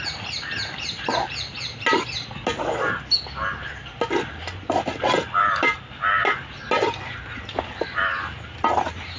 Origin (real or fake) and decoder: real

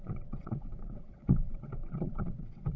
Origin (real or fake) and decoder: fake, vocoder, WaveNeXt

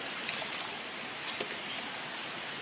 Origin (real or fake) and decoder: real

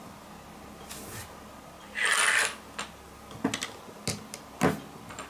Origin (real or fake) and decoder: real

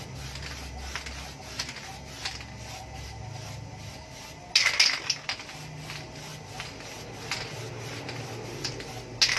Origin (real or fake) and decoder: real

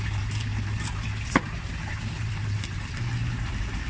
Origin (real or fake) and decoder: fake, vocoder, BigVGAN v2